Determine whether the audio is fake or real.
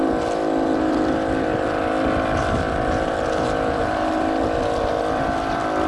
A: real